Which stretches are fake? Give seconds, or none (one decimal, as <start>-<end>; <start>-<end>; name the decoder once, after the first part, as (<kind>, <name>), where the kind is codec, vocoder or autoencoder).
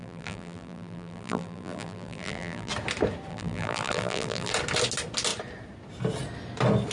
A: 0.0-2.7 (vocoder, BigVGAN v2); 3.3-4.5